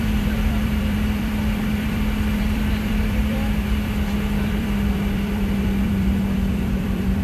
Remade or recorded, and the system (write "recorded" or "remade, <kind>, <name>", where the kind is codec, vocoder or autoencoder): remade, vocoder, BigVGAN v2